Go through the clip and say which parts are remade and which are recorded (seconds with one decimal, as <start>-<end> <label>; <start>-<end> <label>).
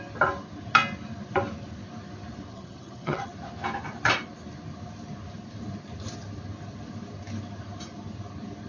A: 0.0-2.5 recorded; 2.5-3.3 remade; 3.3-8.7 recorded